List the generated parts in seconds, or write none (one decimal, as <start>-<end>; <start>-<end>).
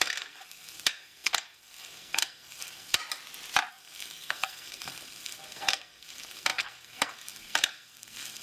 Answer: 0.0-3.0; 3.7-8.4